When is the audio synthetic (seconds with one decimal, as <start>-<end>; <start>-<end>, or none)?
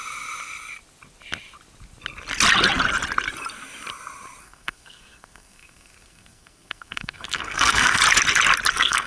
4.4-8.0; 8.7-9.1